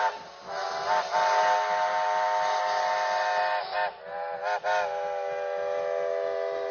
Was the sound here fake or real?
real